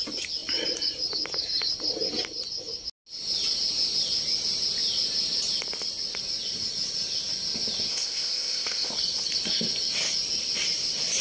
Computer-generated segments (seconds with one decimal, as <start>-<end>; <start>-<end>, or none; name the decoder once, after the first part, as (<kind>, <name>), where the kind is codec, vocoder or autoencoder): 7.9-8.9 (codec, ZipCodec)